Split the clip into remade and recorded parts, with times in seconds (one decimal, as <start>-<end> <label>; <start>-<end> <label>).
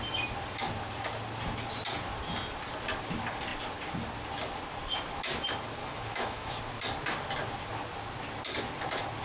0.0-5.8 recorded; 5.8-6.6 remade; 6.6-9.2 recorded